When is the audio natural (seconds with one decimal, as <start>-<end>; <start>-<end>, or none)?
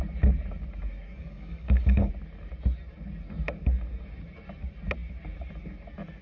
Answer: 0.0-1.1; 2.1-6.2